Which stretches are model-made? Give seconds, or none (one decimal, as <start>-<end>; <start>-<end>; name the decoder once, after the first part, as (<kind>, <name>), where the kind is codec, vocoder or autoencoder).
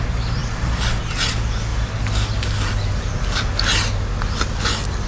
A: none